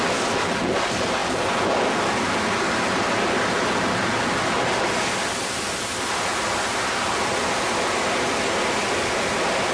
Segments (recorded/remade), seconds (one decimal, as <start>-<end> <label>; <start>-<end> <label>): 0.0-9.7 recorded